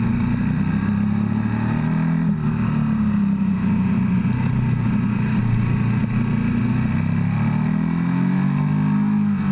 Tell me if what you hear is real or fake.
real